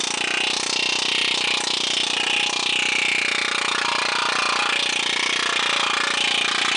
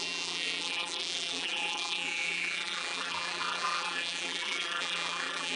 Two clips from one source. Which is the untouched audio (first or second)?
first